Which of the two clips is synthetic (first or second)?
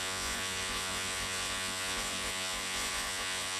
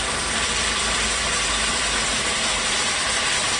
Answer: first